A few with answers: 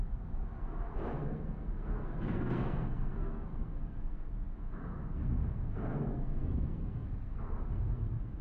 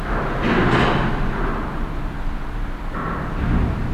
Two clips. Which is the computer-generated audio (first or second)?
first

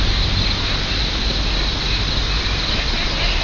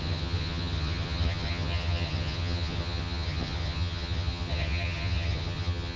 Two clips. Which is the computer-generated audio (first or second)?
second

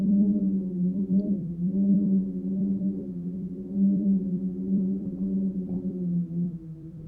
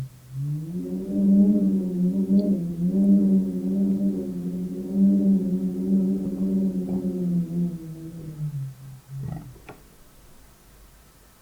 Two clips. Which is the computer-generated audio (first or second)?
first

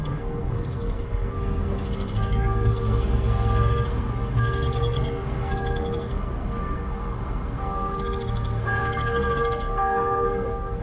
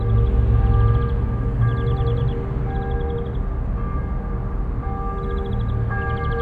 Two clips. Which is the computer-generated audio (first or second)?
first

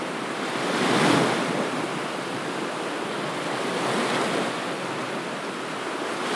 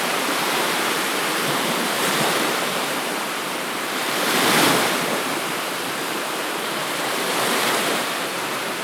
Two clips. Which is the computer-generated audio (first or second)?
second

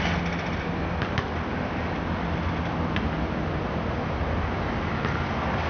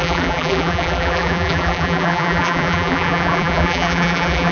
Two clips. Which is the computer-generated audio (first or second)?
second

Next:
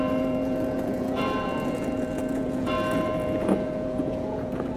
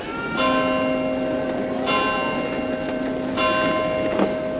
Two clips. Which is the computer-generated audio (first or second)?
first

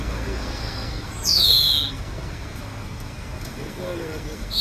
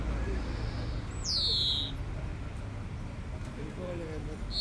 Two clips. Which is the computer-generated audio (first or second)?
first